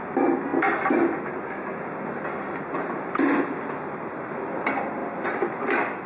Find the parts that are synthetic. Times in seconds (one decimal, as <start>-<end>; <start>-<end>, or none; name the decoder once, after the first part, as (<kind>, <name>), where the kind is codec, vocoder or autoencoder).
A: none